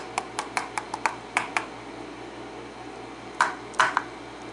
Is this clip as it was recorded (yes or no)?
yes